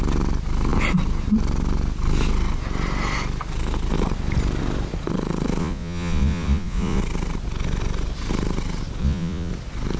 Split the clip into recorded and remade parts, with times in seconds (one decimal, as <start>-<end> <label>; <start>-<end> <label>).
0.0-5.6 recorded; 5.6-7.0 remade; 7.0-9.0 recorded; 9.0-9.5 remade; 9.5-10.0 recorded